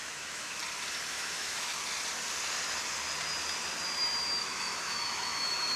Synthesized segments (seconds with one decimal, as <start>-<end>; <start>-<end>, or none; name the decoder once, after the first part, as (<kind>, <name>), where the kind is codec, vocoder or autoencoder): 0.0-0.6 (autoencoder, DAC-VAE); 1.1-1.7; 4.4-5.8